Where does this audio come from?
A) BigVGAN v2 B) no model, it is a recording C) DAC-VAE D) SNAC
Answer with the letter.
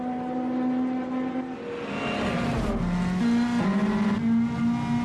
B